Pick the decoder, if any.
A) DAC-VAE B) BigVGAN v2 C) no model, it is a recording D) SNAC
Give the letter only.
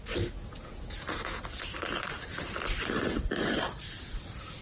C